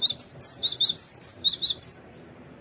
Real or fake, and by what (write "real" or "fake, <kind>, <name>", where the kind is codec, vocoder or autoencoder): real